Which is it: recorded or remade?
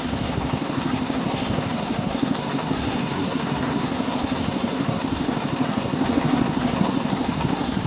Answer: remade